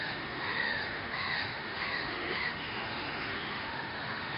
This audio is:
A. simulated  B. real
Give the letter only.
A